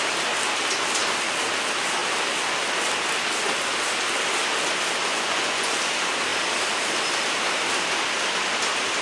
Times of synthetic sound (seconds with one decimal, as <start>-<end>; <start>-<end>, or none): 5.1-5.8